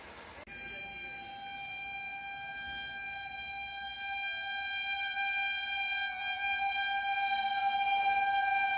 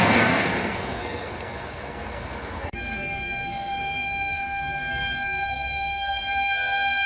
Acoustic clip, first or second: first